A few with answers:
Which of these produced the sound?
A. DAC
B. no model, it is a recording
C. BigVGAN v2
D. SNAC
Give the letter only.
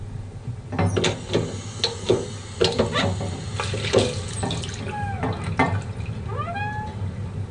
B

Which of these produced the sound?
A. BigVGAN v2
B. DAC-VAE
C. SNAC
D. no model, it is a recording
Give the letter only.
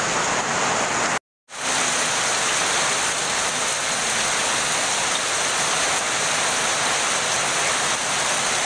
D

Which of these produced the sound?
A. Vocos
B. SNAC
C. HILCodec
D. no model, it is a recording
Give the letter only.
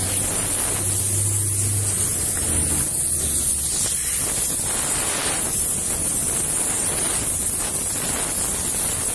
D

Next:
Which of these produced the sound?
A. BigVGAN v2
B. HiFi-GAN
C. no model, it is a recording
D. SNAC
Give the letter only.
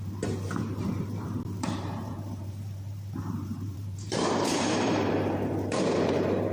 A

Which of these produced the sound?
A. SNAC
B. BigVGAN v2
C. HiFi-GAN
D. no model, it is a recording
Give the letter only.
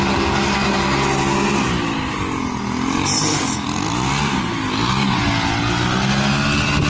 D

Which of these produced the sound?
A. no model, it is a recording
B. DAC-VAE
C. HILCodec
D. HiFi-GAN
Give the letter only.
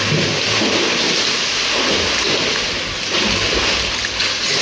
A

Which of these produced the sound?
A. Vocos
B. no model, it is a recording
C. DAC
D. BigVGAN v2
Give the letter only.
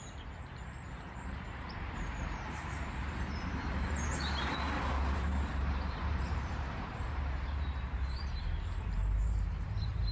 D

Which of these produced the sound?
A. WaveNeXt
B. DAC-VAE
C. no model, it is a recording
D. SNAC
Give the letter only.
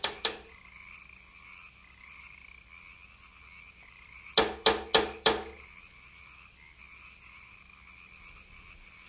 C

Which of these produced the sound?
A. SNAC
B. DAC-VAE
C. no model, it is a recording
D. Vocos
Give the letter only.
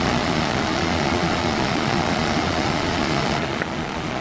D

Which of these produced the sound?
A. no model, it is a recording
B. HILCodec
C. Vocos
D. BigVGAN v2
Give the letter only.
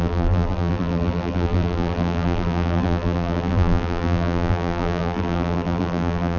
D